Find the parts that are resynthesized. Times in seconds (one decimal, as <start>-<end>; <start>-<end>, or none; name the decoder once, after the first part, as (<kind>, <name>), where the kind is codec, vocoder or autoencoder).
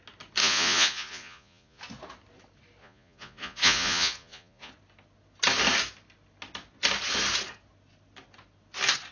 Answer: 0.4-1.8 (vocoder, Vocos); 2.8-4.7